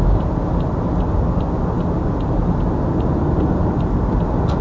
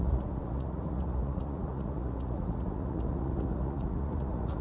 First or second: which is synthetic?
second